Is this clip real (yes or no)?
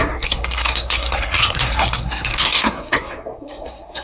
no